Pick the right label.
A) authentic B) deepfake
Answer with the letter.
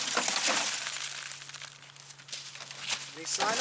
A